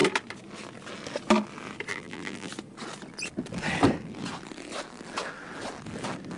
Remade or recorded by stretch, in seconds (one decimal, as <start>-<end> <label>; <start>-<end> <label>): 0.0-1.9 recorded; 1.9-2.5 remade; 2.5-6.4 recorded